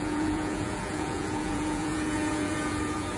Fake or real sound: fake